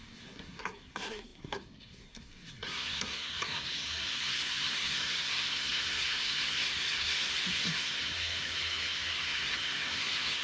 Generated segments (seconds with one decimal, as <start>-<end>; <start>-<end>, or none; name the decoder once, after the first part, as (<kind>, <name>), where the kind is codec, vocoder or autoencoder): 0.0-10.4 (codec, SNAC)